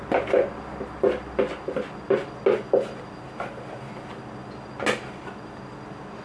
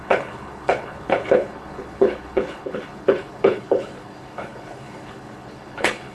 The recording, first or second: first